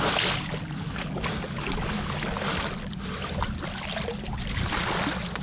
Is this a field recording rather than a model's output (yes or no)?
yes